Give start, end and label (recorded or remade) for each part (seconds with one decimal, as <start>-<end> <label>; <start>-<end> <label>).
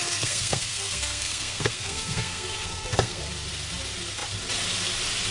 0.0-3.2 remade; 3.2-5.3 recorded